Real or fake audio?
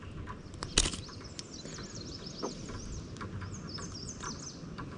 real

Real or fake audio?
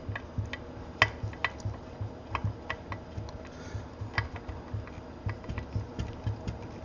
real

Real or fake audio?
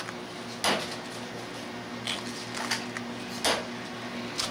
real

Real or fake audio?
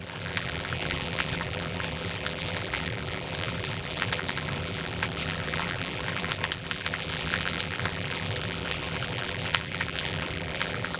fake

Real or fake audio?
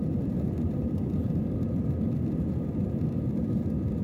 real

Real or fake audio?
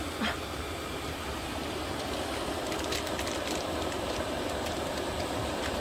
fake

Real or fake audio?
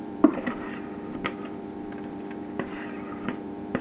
fake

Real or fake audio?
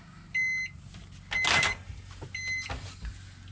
real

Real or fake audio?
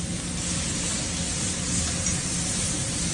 real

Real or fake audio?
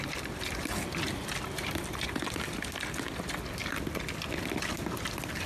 real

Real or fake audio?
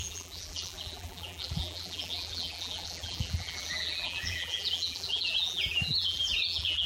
fake